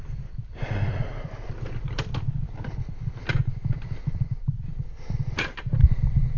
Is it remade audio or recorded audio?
recorded